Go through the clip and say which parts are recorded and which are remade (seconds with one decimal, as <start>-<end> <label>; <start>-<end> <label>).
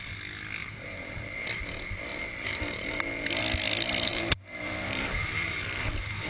0.0-0.6 recorded; 0.6-1.5 remade; 1.5-2.1 recorded; 2.1-3.3 remade; 3.3-4.1 recorded; 4.1-6.3 remade